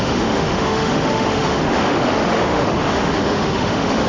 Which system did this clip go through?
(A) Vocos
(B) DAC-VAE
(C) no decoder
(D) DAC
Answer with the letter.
B